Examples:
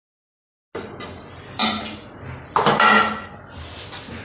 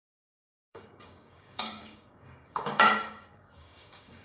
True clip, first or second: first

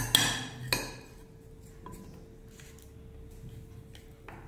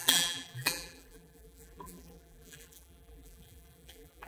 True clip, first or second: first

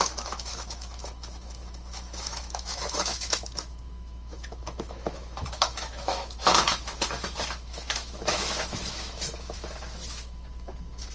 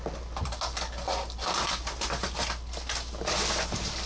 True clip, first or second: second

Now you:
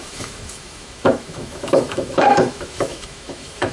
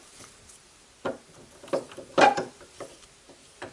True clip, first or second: second